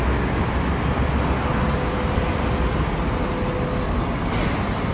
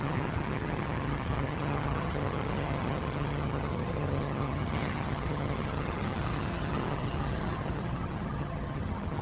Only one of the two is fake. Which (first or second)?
second